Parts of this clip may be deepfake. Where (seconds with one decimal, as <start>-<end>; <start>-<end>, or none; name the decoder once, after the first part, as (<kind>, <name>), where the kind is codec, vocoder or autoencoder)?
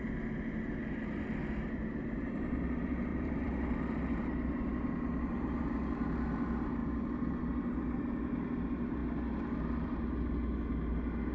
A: 3.1-4.2 (vocoder, BigVGAN v2); 6.8-7.4